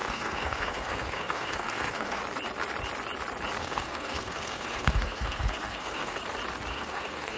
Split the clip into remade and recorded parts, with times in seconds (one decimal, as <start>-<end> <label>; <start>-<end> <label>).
0.0-2.2 remade; 2.2-3.6 recorded; 3.6-6.2 remade; 6.2-6.7 recorded; 6.7-7.4 remade

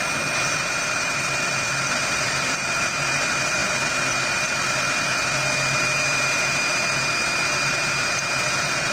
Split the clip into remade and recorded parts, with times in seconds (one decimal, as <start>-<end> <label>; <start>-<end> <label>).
0.0-8.9 recorded

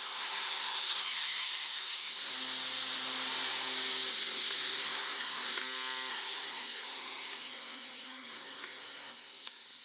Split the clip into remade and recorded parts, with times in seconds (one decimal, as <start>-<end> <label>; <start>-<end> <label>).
0.0-2.3 remade; 2.3-4.1 recorded; 4.1-5.6 remade; 5.6-6.1 recorded; 6.1-9.8 remade

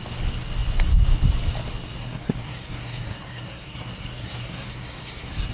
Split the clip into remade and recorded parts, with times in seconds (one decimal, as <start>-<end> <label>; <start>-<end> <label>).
0.0-2.0 recorded; 2.0-5.5 remade